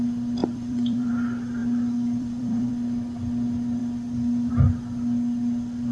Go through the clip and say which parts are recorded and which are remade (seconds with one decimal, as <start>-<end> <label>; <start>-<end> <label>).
0.0-0.4 recorded; 0.4-1.1 remade; 1.1-1.6 recorded; 1.6-2.7 remade; 2.7-3.8 recorded; 3.8-4.5 remade; 4.5-5.9 recorded